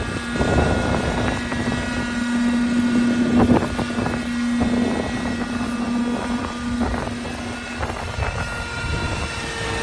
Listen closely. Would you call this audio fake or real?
real